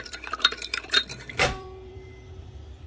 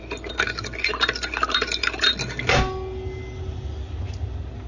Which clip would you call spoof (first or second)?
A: first